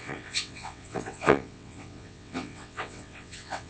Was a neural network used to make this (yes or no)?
yes